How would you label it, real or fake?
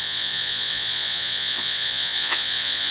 fake